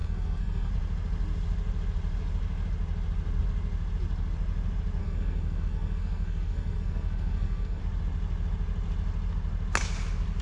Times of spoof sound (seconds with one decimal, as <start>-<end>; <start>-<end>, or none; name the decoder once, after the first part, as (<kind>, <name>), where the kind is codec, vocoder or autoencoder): 0.0-0.7 (codec, SNAC); 5.0-7.8